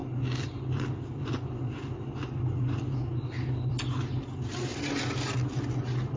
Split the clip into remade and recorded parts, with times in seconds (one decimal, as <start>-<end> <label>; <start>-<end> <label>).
0.0-6.2 recorded